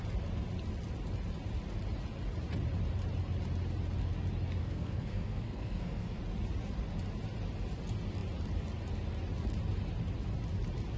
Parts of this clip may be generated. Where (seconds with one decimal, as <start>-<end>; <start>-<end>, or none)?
4.6-6.2